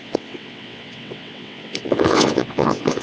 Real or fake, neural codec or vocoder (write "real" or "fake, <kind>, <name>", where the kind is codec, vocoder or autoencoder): fake, vocoder, WaveNeXt